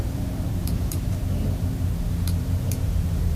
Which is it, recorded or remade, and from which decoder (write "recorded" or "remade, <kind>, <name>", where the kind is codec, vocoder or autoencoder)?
remade, vocoder, BigVGAN v2